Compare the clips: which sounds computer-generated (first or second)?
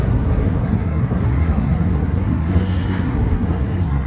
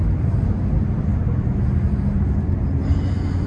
first